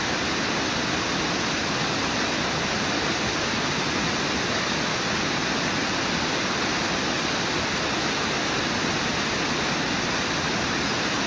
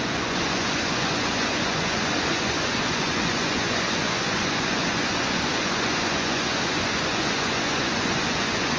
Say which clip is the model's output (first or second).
second